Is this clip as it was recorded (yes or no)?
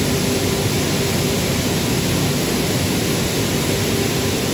yes